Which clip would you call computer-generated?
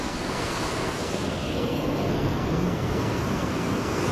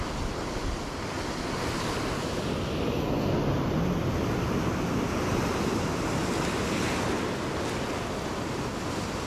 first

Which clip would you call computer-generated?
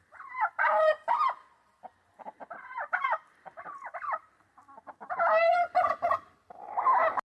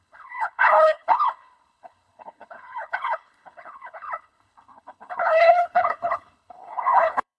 second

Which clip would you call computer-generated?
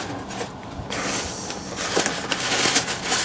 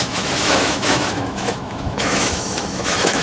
second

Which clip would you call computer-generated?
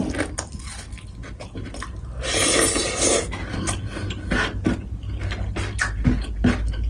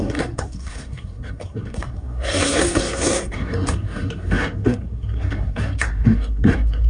second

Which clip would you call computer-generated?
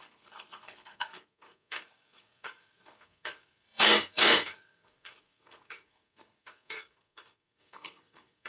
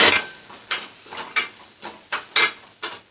first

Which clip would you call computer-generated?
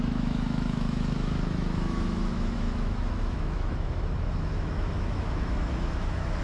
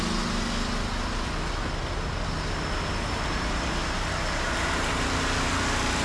first